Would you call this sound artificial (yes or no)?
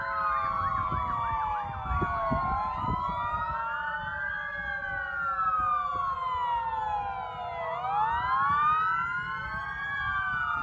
no